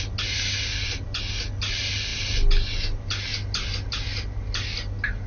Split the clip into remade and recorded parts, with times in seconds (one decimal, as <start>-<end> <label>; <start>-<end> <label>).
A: 0.0-5.3 recorded